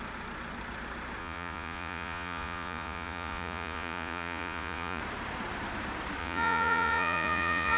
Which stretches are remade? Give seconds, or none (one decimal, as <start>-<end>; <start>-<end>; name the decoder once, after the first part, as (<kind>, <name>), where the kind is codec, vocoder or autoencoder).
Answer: 1.2-5.0 (vocoder, Vocos); 6.2-7.8